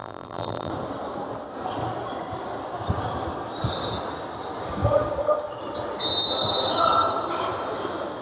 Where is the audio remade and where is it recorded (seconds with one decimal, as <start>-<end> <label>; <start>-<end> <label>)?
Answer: 0.0-0.7 remade; 0.7-8.2 recorded